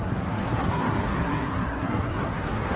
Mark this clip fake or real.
fake